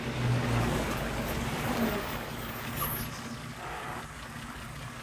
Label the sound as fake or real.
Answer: fake